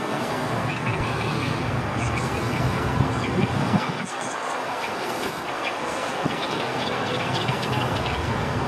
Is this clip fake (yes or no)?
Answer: yes